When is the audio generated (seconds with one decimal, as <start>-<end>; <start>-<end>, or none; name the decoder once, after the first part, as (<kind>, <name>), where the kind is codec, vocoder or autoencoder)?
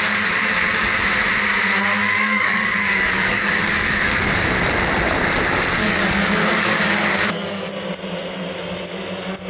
2.0-4.3 (codec, DAC); 5.8-7.7